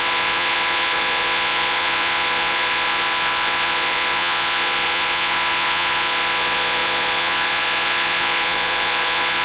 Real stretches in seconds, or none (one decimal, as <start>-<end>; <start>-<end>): none